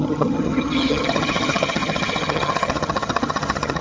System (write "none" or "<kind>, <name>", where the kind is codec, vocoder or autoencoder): vocoder, HiFi-GAN